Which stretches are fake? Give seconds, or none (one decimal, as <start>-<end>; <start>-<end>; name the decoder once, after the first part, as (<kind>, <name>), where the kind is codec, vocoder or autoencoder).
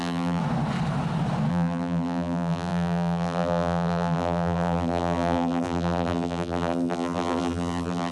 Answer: 0.0-0.4 (vocoder, BigVGAN v2); 1.5-8.1